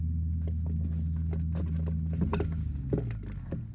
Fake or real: real